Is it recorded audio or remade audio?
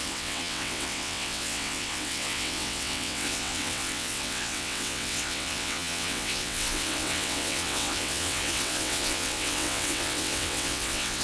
remade